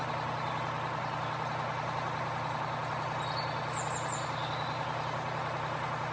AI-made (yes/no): no